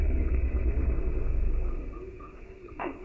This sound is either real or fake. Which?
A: fake